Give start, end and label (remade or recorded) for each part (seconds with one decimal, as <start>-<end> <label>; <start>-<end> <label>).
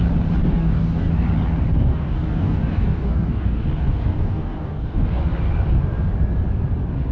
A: 0.0-0.4 recorded; 0.4-1.1 remade; 1.1-1.7 recorded; 1.7-5.2 remade; 5.2-7.1 recorded